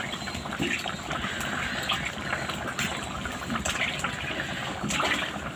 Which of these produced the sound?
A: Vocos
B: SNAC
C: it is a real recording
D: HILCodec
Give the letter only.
C